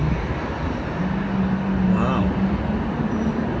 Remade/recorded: recorded